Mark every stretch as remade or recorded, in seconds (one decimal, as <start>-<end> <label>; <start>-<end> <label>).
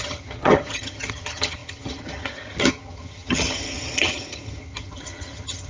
0.0-5.7 remade